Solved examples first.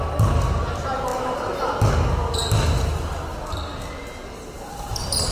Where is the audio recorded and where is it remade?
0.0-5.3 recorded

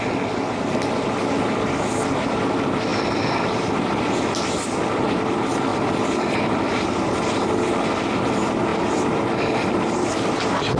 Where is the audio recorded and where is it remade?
0.0-2.9 recorded; 2.9-4.6 remade; 4.6-5.7 recorded; 5.7-7.1 remade; 7.1-8.7 recorded; 8.7-9.7 remade; 9.7-10.8 recorded

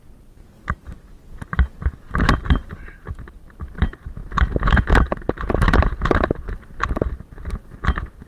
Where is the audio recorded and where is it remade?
0.0-8.3 recorded